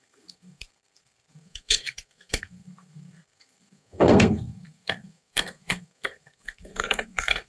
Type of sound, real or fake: fake